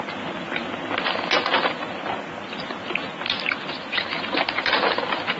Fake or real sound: real